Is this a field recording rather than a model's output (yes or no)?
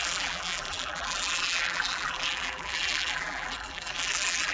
no